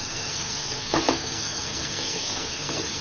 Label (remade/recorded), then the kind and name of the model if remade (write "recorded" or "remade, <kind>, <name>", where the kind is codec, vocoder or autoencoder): remade, codec, SNAC